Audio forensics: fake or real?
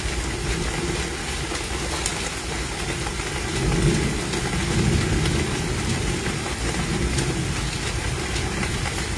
real